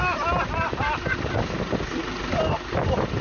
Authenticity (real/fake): real